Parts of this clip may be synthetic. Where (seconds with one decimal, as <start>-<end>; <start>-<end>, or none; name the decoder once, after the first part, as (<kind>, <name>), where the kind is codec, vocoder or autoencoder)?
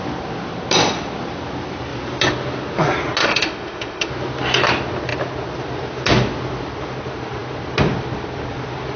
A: 3.2-4.1 (autoencoder, DAC-VAE)